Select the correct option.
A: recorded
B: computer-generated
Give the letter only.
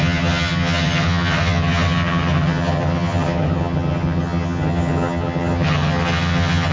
B